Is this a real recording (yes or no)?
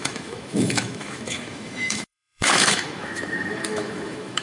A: no